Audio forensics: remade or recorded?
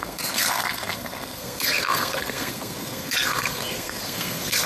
remade